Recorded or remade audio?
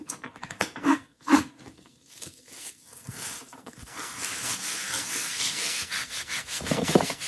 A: remade